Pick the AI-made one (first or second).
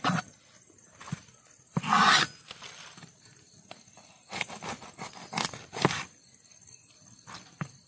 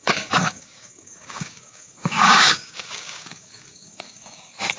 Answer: second